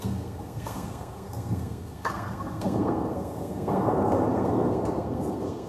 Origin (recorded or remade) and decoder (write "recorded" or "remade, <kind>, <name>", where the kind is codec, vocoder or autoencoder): remade, codec, SNAC